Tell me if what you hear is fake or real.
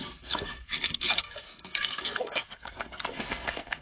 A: fake